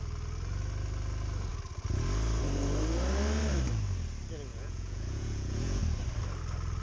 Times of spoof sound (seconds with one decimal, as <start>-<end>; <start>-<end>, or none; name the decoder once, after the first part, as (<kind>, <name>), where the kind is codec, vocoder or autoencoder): 4.5-5.8 (vocoder, Vocos)